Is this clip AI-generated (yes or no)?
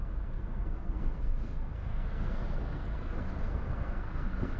yes